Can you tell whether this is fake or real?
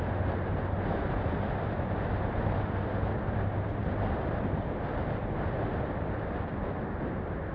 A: real